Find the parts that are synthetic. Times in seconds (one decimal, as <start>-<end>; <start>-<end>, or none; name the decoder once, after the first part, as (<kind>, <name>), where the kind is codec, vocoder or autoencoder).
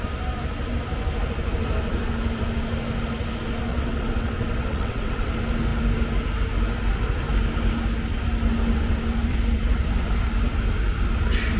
3.7-5.3 (vocoder, WaveNeXt)